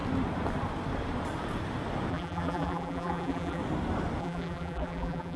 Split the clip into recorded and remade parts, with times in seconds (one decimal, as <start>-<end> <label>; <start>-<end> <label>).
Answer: 0.0-2.1 recorded; 2.1-3.6 remade; 3.6-4.2 recorded; 4.2-5.4 remade